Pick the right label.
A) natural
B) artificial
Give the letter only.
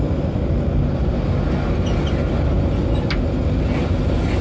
A